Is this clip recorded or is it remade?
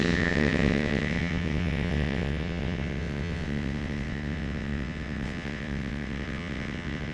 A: remade